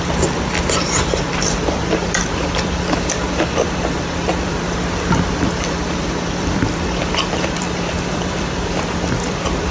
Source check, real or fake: fake